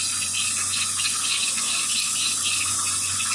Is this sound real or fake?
fake